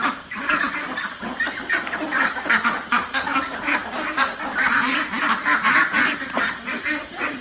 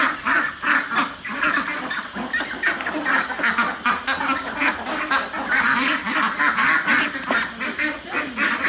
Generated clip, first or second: first